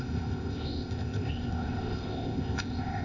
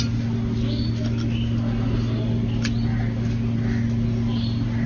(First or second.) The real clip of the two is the second